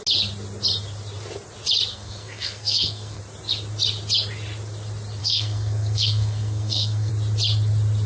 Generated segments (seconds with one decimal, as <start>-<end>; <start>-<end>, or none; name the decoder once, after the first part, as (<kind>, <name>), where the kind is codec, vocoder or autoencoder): 1.9-3.2 (codec, SNAC); 5.2-7.1

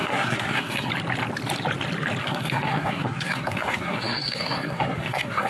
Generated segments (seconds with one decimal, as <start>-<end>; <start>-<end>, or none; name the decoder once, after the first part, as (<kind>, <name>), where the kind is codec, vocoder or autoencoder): 0.0-0.9 (codec, SNAC); 2.2-5.5

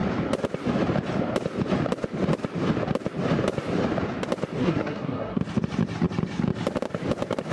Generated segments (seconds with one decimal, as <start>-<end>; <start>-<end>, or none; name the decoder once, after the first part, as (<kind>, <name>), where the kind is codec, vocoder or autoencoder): 4.6-5.4 (codec, SNAC)

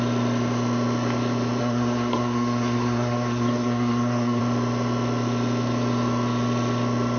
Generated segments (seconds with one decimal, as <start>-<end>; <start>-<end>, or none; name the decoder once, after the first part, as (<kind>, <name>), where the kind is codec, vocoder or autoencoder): 1.6-4.4 (codec, SNAC)

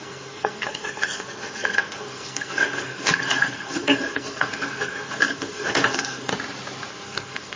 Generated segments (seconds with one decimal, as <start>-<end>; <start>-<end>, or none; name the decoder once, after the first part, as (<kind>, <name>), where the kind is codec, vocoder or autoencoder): 0.0-6.3 (codec, SNAC); 6.9-7.6